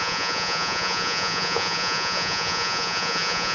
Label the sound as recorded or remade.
remade